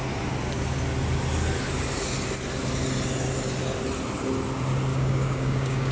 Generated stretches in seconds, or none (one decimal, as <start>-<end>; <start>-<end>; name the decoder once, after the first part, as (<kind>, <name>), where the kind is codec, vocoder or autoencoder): 4.9-5.9 (codec, DAC)